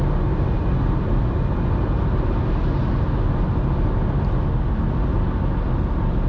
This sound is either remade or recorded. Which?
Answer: recorded